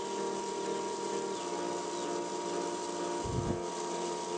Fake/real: real